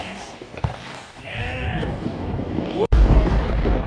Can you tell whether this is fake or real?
fake